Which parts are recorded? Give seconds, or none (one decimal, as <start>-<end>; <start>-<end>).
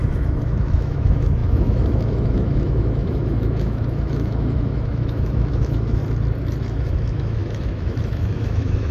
6.0-6.6